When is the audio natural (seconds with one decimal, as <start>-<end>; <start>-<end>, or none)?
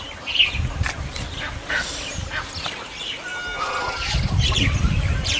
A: 0.0-5.4